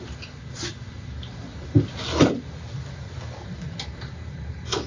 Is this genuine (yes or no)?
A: yes